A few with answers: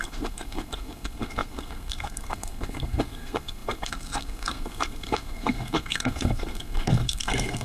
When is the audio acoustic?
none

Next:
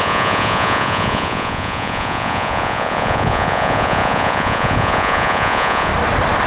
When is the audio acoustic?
5.9-6.5

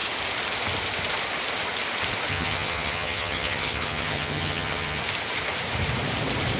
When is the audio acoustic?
0.0-2.3; 5.0-6.6